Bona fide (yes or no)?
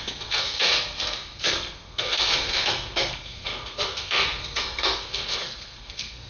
no